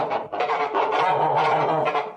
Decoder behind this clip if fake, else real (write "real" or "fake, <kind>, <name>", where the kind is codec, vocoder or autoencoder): real